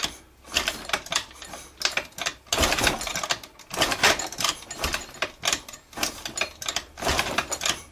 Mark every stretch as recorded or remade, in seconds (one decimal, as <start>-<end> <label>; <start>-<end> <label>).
0.0-7.9 recorded

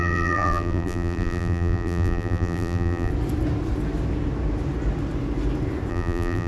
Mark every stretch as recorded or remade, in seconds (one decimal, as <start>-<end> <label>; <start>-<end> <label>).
0.0-3.1 remade; 3.1-5.9 recorded; 5.9-6.5 remade

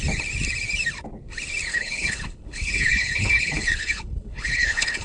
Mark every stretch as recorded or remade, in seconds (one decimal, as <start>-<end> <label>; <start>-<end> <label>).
0.0-1.7 recorded; 1.7-5.0 remade

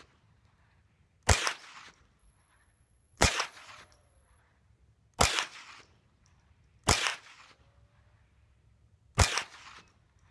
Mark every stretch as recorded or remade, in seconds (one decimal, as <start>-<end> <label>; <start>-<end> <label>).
0.0-2.2 recorded; 2.2-4.4 remade; 4.4-10.3 recorded

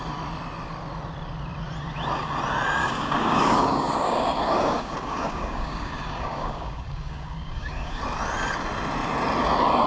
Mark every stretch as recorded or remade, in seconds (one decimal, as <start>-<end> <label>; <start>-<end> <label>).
0.0-2.8 recorded; 2.8-8.0 remade; 8.0-9.9 recorded